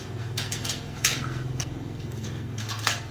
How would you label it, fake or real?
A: fake